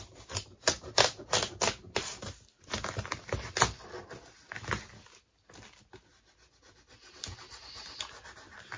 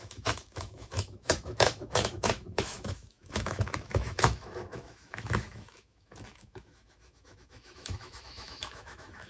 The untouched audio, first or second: first